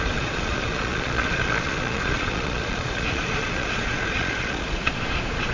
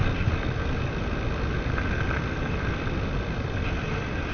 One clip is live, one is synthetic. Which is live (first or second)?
second